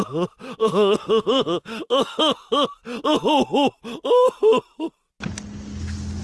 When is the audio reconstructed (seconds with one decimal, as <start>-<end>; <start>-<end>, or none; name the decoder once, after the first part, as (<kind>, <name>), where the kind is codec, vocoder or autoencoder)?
0.6-2.2 (autoencoder, DAC-VAE)